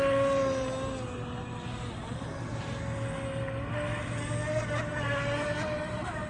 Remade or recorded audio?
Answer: recorded